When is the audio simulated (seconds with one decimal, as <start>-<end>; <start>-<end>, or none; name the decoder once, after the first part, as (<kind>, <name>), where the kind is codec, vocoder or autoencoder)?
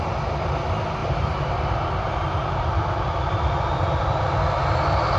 1.0-4.1 (vocoder, BigVGAN v2)